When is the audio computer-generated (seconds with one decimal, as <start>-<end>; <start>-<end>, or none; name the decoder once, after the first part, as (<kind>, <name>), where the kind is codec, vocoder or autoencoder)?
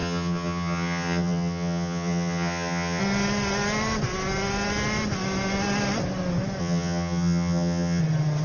0.0-3.0 (vocoder, HiFi-GAN); 6.6-8.0